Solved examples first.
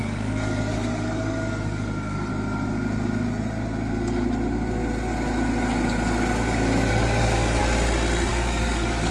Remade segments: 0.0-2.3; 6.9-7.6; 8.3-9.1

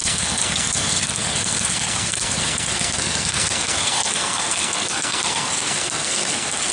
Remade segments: 0.0-6.7

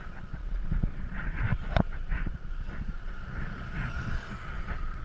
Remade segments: 0.0-5.0

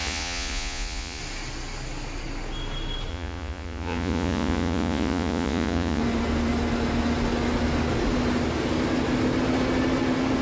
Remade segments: 0.0-1.2; 3.1-6.0

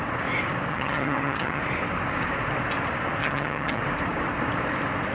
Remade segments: 0.7-1.6; 3.2-3.8

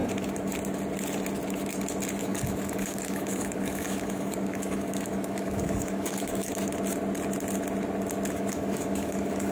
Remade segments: 2.2-6.5; 8.3-9.5